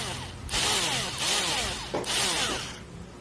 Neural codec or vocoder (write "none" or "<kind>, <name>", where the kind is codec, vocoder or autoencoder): none